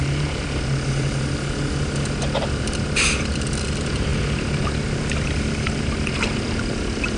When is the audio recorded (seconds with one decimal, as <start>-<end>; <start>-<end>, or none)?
0.0-7.2